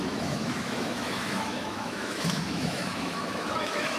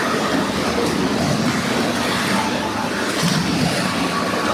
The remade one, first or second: first